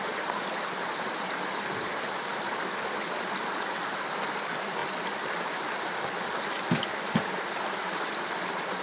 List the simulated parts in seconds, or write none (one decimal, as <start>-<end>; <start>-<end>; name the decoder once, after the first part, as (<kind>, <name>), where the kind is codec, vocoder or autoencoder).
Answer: none